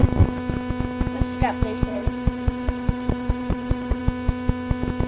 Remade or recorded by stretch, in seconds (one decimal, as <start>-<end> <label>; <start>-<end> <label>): 0.0-1.9 recorded; 1.9-4.0 remade; 4.0-5.1 recorded